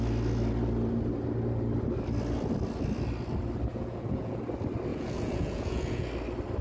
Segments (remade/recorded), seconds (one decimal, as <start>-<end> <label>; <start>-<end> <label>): 0.0-3.7 recorded; 3.7-4.4 remade; 4.4-4.9 recorded; 4.9-6.1 remade; 6.1-6.6 recorded